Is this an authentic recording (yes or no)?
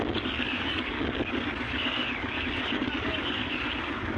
no